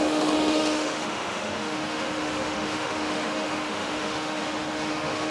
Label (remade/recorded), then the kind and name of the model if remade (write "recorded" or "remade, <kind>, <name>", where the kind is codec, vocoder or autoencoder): remade, autoencoder, DAC-VAE